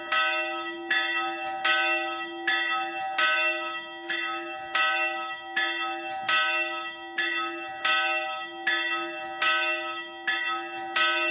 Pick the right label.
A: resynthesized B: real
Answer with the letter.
B